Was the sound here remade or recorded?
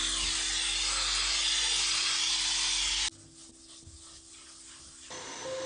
recorded